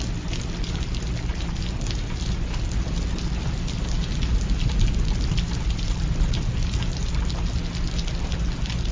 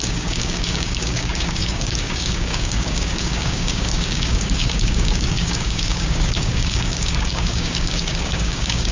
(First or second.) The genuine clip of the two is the first